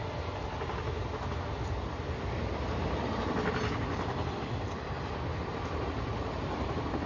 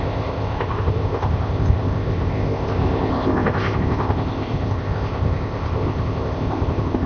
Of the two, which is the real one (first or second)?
first